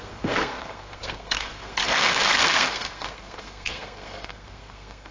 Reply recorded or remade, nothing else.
remade